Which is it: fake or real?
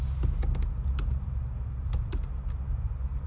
real